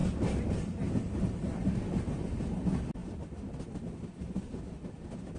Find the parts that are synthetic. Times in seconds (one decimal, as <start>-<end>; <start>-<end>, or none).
none